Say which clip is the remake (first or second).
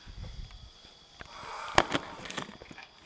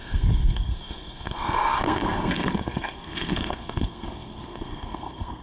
second